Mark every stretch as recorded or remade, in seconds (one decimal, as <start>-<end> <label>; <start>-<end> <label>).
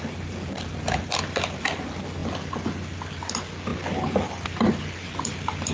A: 0.0-5.7 recorded